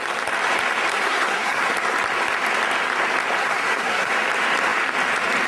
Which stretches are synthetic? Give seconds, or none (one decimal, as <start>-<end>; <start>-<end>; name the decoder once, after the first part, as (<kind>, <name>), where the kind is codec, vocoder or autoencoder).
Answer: 0.9-1.6 (codec, SNAC); 3.4-4.1